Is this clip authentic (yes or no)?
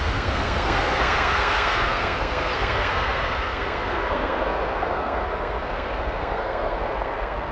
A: no